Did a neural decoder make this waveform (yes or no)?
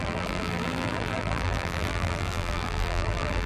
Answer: yes